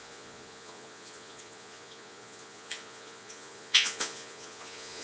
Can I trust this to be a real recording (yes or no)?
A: no